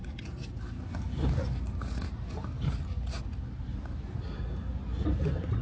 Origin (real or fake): real